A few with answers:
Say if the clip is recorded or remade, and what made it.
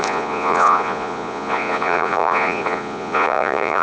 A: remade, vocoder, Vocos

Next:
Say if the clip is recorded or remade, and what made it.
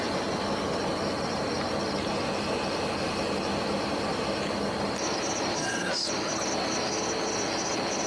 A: recorded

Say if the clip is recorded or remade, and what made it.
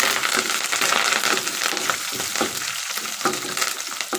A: recorded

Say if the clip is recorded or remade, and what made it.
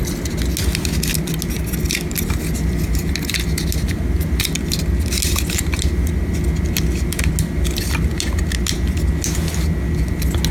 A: recorded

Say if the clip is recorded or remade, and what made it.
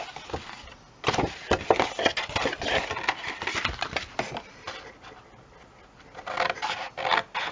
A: recorded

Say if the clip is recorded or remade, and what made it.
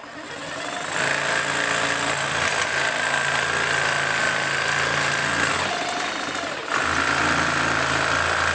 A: recorded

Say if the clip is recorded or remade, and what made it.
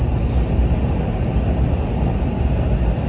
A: recorded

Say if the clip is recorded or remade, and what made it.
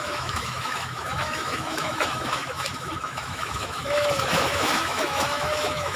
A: remade, autoencoder, DAC-VAE